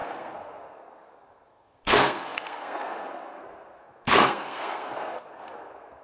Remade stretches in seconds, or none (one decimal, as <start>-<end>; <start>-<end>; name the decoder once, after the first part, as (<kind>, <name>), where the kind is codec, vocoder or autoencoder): 0.0-6.0 (codec, SNAC)